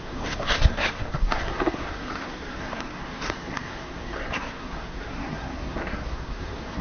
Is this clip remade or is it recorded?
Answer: remade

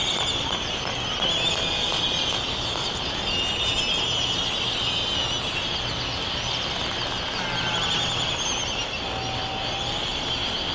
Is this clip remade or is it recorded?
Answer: recorded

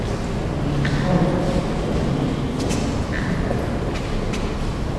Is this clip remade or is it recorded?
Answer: recorded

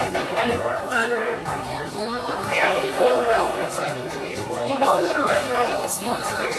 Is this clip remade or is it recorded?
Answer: remade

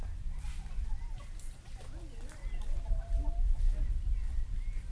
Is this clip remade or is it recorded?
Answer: recorded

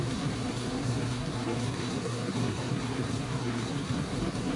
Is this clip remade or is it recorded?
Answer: remade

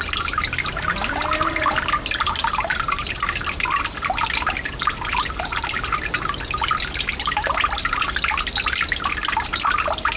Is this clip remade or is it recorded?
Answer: recorded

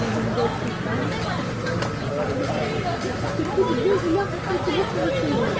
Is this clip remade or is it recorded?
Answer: recorded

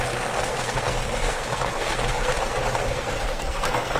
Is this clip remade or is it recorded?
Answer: remade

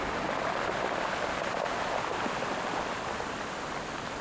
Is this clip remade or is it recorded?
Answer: recorded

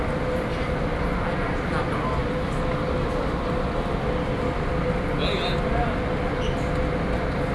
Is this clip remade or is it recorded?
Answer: recorded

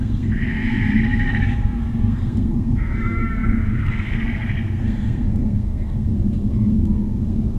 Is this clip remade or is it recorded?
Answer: remade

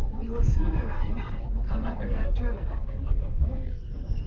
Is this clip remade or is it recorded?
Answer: remade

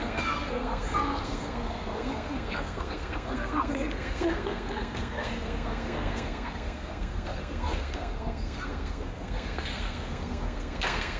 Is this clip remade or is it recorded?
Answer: remade